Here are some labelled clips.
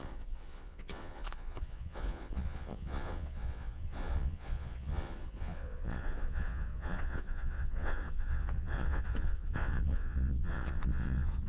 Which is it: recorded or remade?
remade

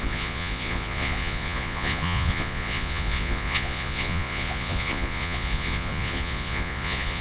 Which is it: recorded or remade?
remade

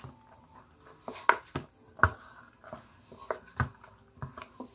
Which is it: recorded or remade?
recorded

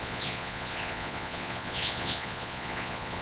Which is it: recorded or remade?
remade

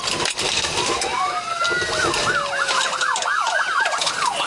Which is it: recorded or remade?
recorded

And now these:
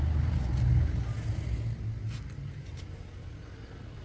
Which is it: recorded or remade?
recorded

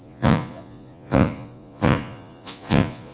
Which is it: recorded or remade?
remade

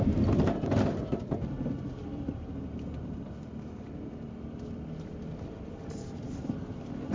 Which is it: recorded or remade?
recorded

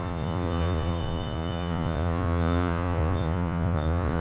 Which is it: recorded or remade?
remade